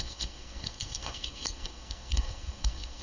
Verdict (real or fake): fake